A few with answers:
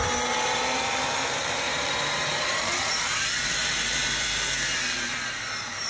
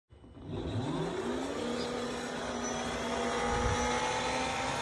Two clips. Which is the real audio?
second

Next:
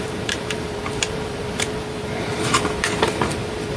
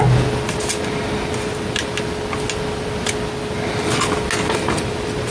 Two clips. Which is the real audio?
second